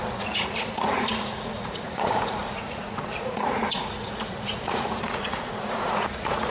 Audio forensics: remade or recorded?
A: remade